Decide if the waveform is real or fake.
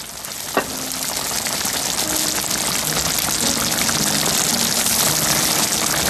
real